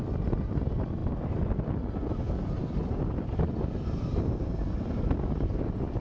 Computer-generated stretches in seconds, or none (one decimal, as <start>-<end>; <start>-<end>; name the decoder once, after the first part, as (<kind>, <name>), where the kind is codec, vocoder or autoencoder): none